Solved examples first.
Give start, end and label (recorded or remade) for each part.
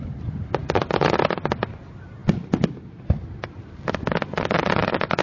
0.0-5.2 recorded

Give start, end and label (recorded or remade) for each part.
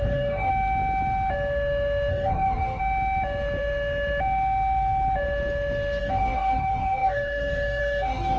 0.0-0.5 remade; 0.5-2.1 recorded; 2.1-2.8 remade; 2.8-6.0 recorded; 6.0-8.4 remade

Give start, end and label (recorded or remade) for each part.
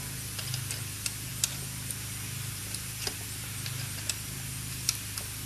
0.0-5.5 recorded